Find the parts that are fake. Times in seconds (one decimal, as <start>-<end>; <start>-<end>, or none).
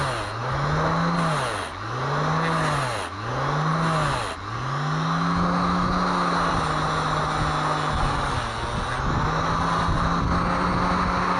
none